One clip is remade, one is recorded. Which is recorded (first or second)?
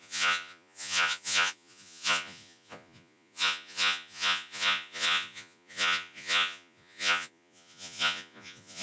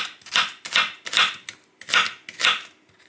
second